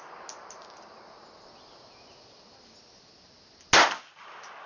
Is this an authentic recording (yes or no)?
yes